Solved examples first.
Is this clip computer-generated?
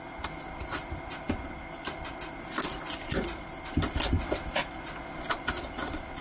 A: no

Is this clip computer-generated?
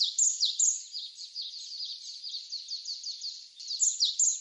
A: no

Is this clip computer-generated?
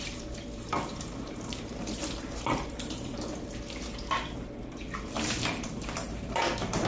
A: yes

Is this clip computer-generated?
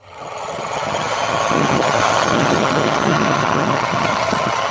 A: yes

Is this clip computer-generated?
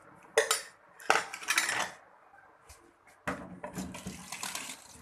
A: no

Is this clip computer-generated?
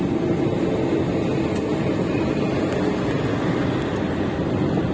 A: no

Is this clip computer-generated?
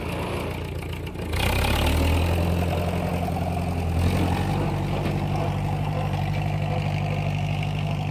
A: no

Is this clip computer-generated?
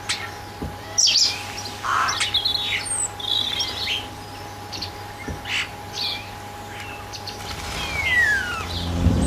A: no